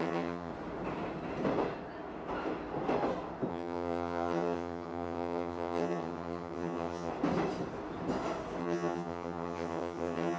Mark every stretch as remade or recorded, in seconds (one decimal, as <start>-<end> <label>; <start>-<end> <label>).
0.0-0.5 remade; 0.5-3.5 recorded; 3.5-7.1 remade; 7.1-8.6 recorded; 8.6-10.4 remade